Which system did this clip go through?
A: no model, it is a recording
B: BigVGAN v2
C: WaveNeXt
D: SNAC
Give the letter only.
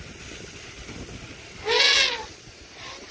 A